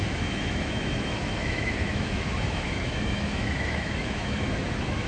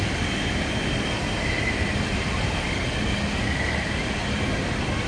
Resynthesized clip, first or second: first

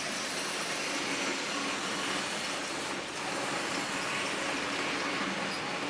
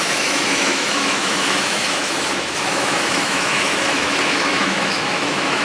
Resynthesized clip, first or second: second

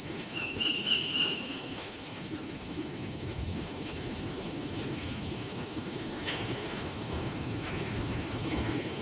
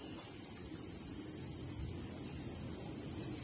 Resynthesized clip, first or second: first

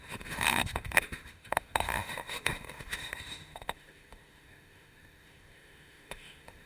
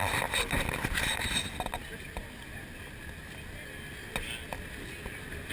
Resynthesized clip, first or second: first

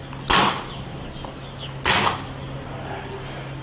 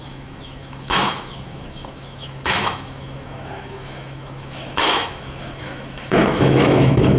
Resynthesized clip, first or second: second